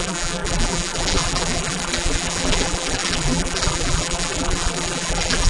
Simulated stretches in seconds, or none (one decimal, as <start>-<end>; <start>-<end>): 0.0-5.5